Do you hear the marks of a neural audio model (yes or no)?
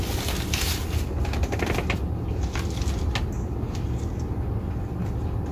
no